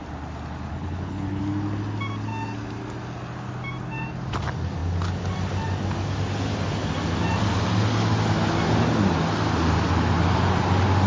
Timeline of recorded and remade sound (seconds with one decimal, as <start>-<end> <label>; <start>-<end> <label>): 0.0-0.7 recorded; 0.7-1.4 remade; 1.4-11.1 recorded